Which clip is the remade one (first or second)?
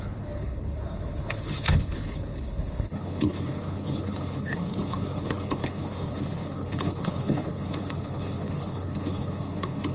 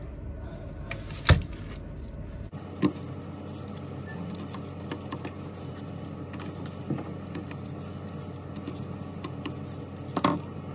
first